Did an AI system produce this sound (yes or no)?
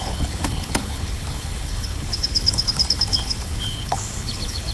yes